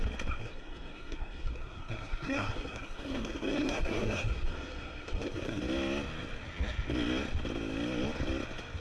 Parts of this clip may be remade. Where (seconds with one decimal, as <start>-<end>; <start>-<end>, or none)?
0.4-5.6